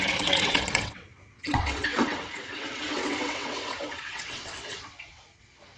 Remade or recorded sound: remade